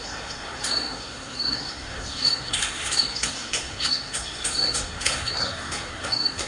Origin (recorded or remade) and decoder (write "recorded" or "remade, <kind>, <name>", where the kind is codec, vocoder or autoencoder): remade, codec, SNAC